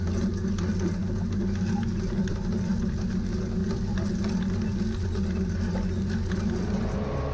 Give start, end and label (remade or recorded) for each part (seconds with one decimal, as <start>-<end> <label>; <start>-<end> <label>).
0.0-7.3 recorded